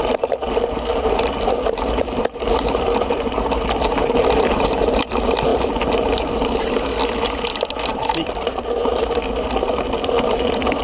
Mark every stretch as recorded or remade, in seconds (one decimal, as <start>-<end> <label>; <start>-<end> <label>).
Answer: 0.0-5.1 remade; 5.1-5.5 recorded; 5.5-6.3 remade; 6.3-7.9 recorded; 7.9-9.0 remade; 9.0-10.8 recorded